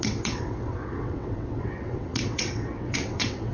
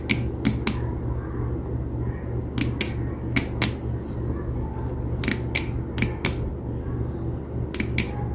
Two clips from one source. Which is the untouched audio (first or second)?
second